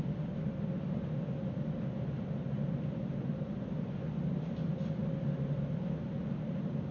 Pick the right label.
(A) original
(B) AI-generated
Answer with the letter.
A